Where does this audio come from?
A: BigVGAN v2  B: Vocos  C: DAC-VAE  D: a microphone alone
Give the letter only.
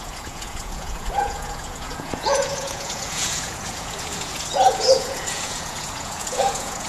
B